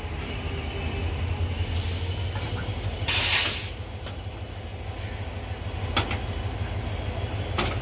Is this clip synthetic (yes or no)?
no